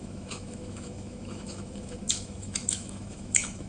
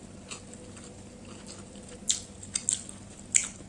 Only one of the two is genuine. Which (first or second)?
second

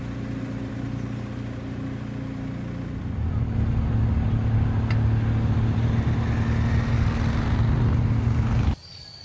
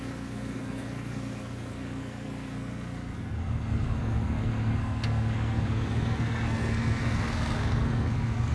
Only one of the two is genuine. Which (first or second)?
first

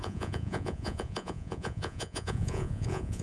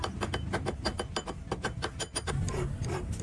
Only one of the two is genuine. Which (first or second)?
second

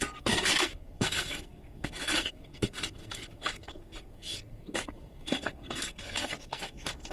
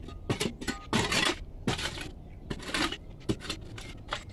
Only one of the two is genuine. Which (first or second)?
second